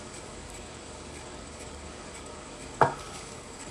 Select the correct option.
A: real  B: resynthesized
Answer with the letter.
B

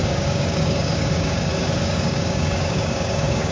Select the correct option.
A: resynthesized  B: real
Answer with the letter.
A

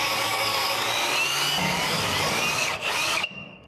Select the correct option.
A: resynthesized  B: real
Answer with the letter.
A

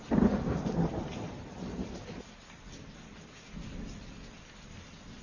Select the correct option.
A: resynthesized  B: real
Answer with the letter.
B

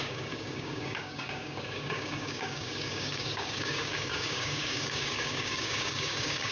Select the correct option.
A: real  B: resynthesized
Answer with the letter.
B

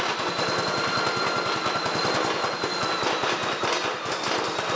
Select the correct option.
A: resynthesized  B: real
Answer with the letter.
B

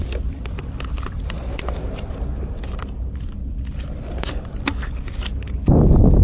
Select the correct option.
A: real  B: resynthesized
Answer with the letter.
A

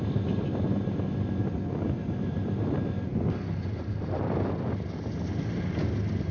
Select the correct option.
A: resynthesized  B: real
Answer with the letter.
B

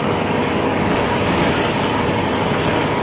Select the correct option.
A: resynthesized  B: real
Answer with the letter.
A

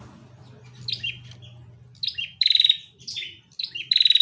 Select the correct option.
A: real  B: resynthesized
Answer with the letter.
A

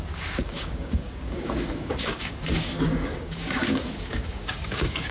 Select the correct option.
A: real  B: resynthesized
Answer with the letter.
B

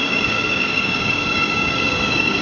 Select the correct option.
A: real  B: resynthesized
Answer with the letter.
B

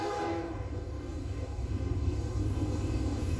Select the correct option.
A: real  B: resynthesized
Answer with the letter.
B